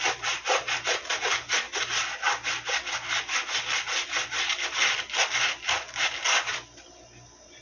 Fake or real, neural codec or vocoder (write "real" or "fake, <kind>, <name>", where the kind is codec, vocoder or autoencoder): real